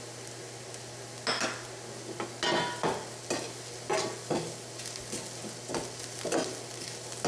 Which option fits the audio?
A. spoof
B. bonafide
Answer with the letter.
B